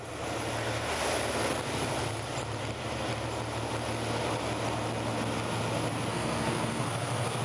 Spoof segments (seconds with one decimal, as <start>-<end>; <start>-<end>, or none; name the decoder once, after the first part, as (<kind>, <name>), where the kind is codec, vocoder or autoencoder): 6.1-7.4 (codec, SNAC)